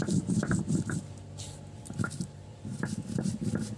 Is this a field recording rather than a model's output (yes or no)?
yes